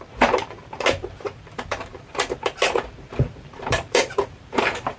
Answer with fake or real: fake